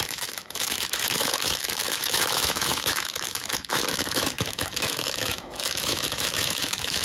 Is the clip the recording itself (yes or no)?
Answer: no